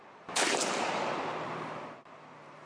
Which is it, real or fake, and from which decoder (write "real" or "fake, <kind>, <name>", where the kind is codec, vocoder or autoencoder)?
fake, vocoder, BigVGAN v2